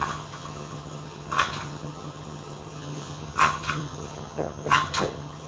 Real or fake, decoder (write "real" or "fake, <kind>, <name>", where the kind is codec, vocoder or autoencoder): fake, vocoder, HiFi-GAN